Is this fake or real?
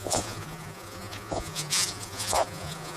fake